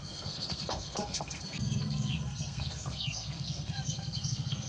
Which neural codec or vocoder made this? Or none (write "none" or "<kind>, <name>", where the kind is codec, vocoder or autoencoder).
codec, SNAC